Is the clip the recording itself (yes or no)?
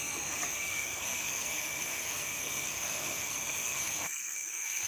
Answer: no